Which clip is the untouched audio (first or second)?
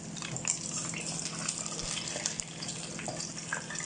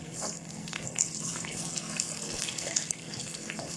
first